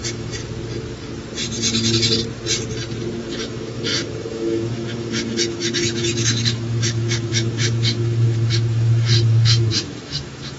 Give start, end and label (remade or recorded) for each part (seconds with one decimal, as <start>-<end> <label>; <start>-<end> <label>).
0.0-0.4 remade; 0.4-3.2 recorded; 3.2-10.6 remade